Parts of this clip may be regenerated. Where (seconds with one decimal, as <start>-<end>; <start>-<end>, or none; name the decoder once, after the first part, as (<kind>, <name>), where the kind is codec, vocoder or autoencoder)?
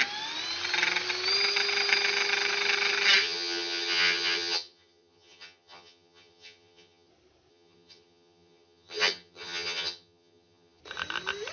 3.2-7.1 (vocoder, HiFi-GAN); 7.5-10.8